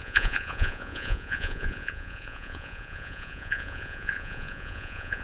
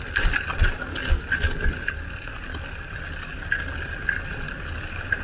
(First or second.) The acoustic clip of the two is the second